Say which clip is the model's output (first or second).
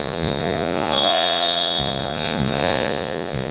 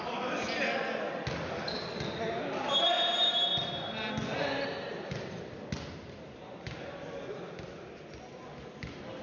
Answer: first